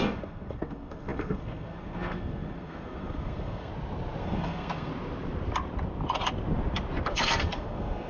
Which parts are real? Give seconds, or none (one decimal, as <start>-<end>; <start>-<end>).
3.7-4.2; 4.9-7.1